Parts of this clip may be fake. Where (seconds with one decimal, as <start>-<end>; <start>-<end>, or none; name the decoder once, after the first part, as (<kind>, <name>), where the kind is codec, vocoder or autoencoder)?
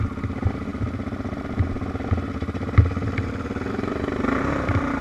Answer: none